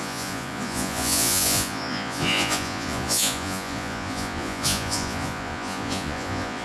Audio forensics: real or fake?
fake